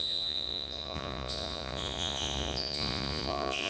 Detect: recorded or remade remade